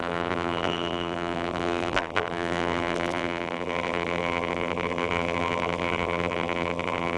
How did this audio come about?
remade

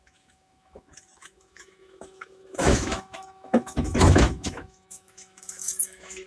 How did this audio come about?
remade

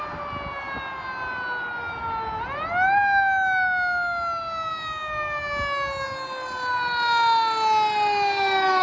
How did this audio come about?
recorded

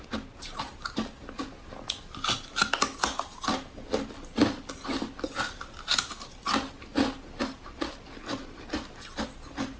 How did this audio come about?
recorded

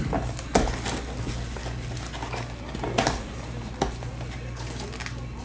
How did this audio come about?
recorded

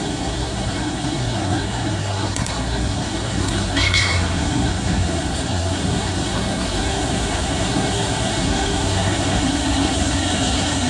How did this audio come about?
remade